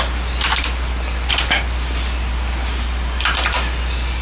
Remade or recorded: recorded